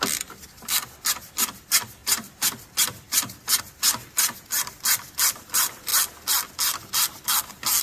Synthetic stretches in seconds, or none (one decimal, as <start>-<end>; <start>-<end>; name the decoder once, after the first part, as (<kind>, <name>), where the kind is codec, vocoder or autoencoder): none